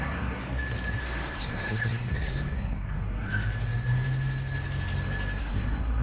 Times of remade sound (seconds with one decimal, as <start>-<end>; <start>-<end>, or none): 0.0-0.4; 1.0-3.3; 5.4-6.0